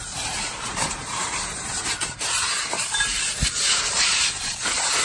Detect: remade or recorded remade